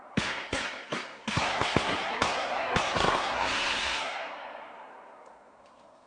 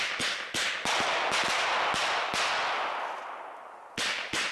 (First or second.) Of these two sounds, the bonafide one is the second